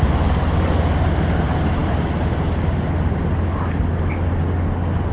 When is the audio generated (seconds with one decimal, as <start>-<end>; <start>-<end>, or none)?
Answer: none